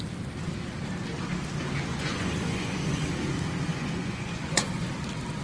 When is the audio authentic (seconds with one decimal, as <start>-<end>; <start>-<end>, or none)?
0.0-1.9; 3.1-3.7; 4.9-5.4